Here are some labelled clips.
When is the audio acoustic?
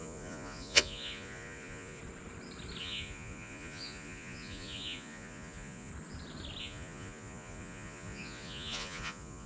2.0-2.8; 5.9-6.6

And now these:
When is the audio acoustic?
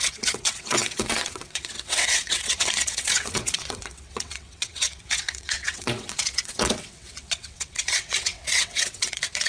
none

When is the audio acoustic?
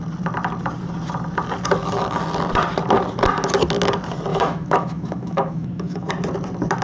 0.0-4.3; 6.1-6.8